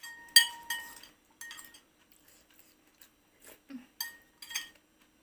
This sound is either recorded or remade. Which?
recorded